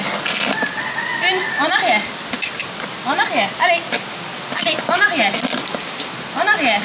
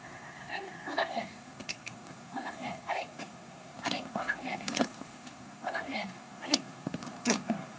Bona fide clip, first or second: first